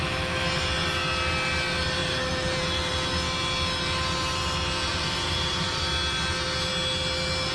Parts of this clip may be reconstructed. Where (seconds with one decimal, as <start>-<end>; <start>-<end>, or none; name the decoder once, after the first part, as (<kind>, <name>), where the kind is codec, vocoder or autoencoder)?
2.0-2.9 (vocoder, BigVGAN v2); 4.9-5.8